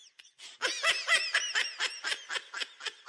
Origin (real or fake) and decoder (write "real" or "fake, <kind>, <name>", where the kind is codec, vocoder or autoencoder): real